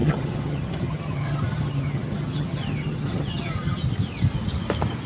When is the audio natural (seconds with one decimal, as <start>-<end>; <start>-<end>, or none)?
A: 3.8-5.1